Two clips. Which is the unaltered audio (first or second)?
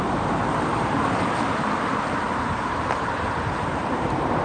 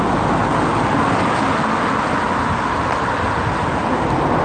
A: second